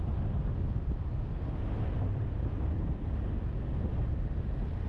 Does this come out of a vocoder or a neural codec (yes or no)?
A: no